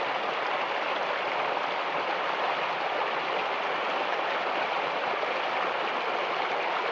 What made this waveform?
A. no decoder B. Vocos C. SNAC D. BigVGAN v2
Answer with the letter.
A